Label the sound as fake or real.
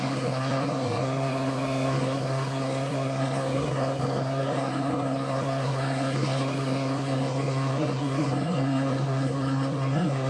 fake